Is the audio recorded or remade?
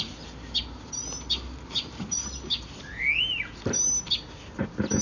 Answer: recorded